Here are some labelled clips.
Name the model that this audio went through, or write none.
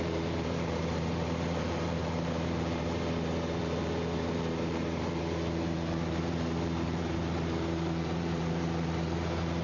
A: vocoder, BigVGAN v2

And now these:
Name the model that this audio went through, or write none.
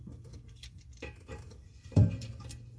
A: vocoder, BigVGAN v2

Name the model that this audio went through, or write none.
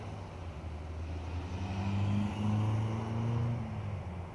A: none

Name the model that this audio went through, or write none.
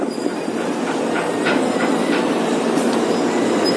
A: none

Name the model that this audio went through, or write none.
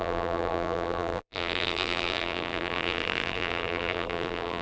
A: vocoder, BigVGAN v2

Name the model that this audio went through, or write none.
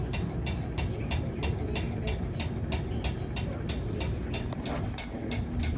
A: none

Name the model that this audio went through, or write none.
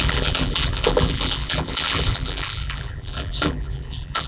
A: vocoder, BigVGAN v2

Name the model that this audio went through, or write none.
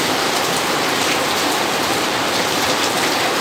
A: vocoder, BigVGAN v2